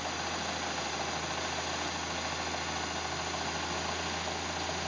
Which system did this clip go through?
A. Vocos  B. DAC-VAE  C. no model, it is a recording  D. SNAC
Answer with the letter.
C